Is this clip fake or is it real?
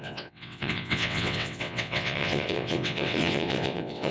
fake